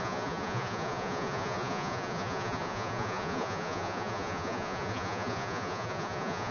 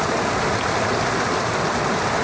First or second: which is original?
second